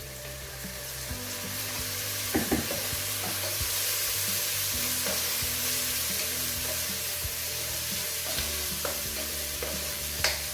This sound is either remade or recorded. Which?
remade